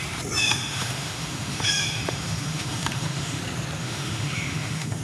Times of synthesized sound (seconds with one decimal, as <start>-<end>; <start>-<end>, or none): 0.4-3.4; 3.8-5.0